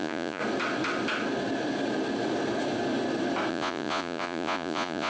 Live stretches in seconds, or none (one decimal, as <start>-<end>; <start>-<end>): 0.4-3.5